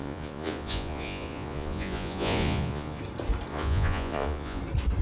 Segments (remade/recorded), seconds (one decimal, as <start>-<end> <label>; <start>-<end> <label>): 0.0-3.0 remade; 3.0-3.5 recorded; 3.5-4.6 remade; 4.6-5.0 recorded